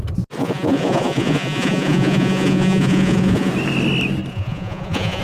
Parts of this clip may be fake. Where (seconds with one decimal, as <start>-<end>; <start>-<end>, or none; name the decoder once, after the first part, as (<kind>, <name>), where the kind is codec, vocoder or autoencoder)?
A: 0.4-3.5 (vocoder, Vocos); 4.3-5.2